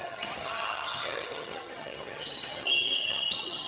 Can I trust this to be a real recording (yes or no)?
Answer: no